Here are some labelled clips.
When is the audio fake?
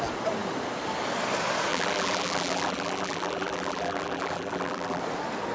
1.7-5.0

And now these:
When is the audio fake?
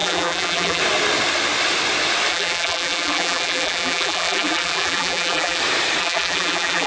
0.0-0.8; 2.3-5.6; 6.0-6.9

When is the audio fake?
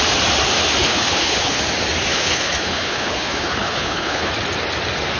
0.8-1.6; 2.1-4.3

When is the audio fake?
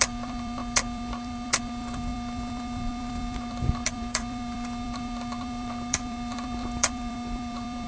0.0-7.9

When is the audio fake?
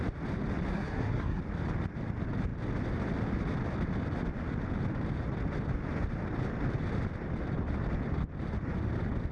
0.7-1.4